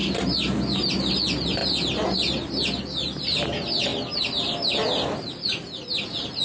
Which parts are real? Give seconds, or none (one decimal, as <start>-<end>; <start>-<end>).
0.0-6.4